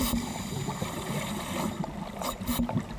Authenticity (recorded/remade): recorded